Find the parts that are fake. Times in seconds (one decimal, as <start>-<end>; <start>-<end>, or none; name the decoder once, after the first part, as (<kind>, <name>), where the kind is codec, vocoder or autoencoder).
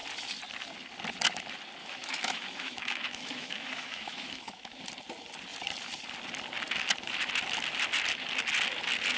1.8-4.8 (autoencoder, DAC-VAE)